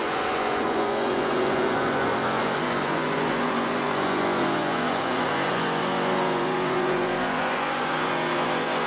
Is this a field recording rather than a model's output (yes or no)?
no